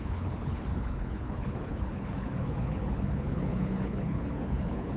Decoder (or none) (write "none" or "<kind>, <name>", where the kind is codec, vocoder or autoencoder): codec, HILCodec